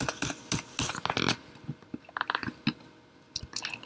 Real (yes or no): yes